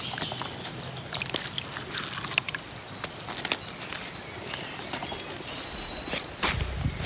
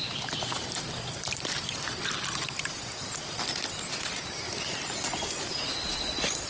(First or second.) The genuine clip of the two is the first